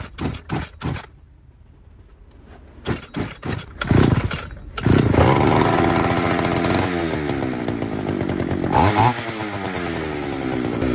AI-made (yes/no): no